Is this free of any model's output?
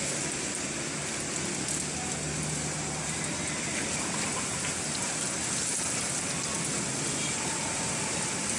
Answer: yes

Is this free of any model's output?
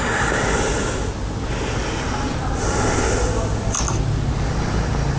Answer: yes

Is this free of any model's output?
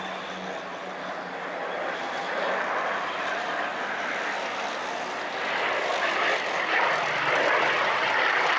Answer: yes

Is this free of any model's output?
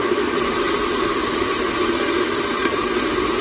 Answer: yes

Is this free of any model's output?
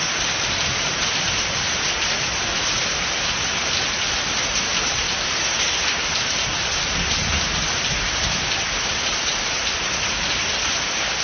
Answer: no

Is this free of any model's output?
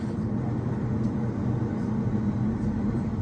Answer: yes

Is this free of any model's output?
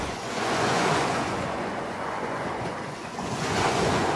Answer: no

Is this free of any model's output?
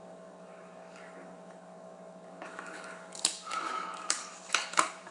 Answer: no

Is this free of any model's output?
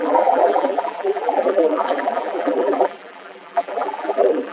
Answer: no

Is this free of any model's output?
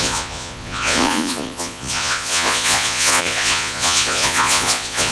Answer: no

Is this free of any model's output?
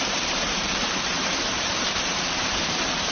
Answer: no